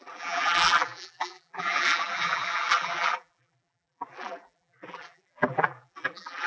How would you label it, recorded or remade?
remade